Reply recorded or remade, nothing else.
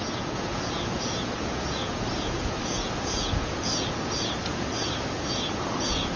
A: remade